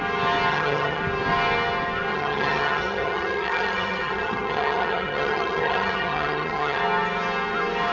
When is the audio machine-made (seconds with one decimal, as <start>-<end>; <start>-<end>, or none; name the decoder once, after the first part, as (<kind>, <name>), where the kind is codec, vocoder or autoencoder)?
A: 0.5-1.0 (vocoder, HiFi-GAN); 2.1-6.8